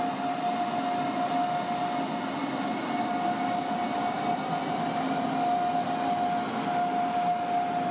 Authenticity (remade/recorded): recorded